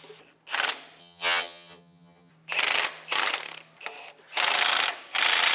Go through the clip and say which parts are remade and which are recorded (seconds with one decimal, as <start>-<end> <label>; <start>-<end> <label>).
0.0-1.0 recorded; 1.0-2.3 remade; 2.3-5.5 recorded